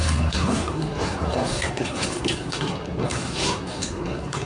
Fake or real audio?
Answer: fake